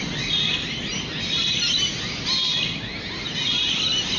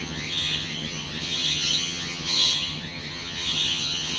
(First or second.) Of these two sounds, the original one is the first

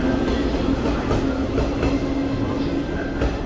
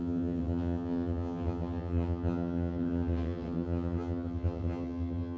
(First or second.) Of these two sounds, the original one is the first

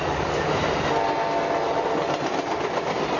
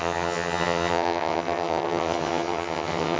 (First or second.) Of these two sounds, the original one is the first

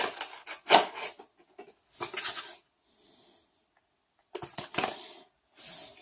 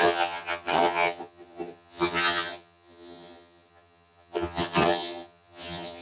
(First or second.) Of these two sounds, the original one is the first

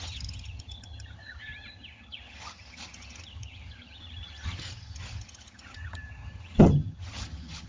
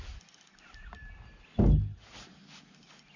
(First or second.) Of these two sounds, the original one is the second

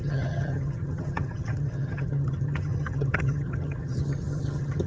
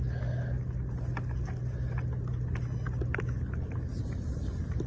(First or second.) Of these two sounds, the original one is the second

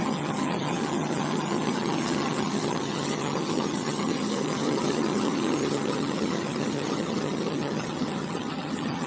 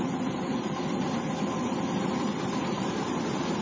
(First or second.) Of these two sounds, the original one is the second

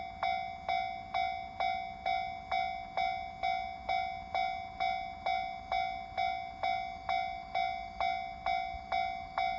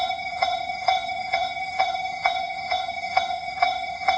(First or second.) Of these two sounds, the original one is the first